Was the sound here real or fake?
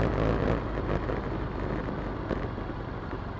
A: real